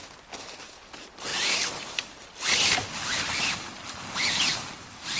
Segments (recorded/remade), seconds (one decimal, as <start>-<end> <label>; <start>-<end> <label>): 0.0-5.2 recorded